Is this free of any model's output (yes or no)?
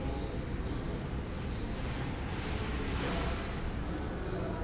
yes